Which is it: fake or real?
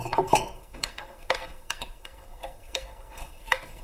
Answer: fake